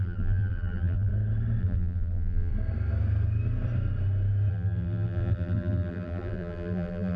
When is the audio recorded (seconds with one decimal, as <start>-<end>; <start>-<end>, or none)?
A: 1.1-1.6; 2.5-4.5